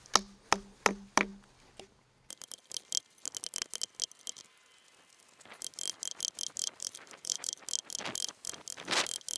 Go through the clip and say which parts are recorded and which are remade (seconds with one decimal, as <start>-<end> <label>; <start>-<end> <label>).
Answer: 0.0-6.6 recorded; 6.6-7.6 remade; 7.6-9.4 recorded